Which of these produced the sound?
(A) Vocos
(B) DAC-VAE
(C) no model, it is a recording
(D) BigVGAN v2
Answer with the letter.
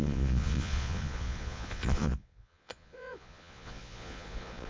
A